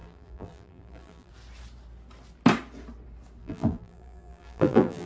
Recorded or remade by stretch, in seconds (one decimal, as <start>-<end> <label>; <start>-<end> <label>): 0.0-1.3 remade; 1.3-3.4 recorded; 3.4-5.1 remade